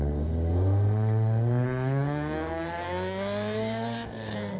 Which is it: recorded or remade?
remade